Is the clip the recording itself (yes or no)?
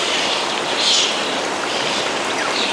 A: yes